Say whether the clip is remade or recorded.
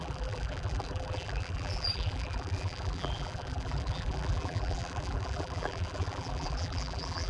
remade